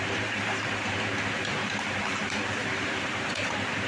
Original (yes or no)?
no